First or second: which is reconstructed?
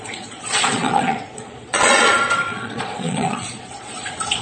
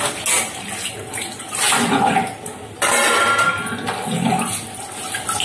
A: first